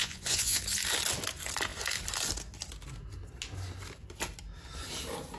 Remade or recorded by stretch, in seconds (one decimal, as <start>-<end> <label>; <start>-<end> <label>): 0.0-0.6 remade; 0.6-5.4 recorded